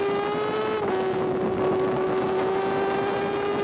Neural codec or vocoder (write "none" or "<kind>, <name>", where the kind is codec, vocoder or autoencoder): none